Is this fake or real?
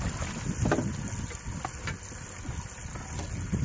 real